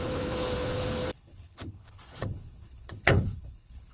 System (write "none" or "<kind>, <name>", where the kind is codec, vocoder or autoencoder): codec, HILCodec